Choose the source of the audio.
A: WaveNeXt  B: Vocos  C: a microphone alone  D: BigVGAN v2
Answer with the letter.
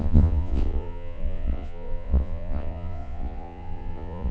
B